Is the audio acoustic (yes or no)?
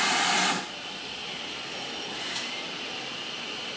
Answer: yes